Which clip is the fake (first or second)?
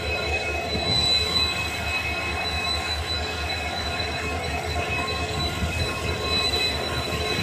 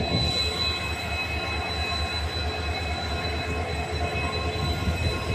first